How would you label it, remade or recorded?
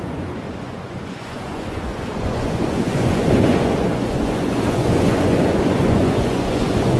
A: remade